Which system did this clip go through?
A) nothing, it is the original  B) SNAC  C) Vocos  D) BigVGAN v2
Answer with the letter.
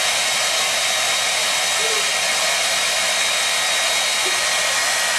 A